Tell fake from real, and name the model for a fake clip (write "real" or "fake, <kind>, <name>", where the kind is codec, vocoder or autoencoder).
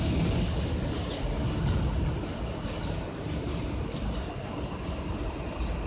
real